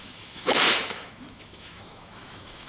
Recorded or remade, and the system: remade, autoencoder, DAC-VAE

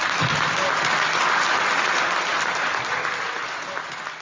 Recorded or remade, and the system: recorded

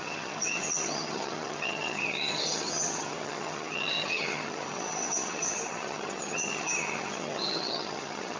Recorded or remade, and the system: remade, vocoder, HiFi-GAN